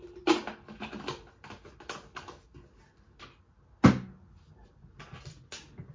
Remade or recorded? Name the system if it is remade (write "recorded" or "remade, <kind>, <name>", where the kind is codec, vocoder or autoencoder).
recorded